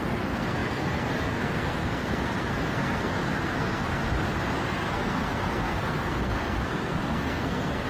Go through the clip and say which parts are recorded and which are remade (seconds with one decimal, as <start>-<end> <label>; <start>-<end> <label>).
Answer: 0.0-4.0 remade; 4.0-4.6 recorded; 4.6-7.9 remade